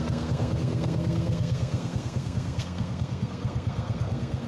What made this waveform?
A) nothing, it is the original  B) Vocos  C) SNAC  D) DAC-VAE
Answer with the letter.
C